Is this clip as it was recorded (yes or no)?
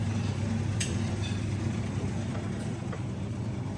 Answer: no